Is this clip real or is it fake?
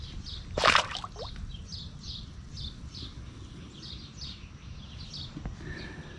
real